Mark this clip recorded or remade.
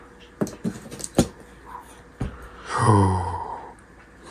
recorded